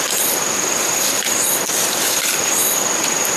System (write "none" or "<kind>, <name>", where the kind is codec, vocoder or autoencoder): vocoder, BigVGAN v2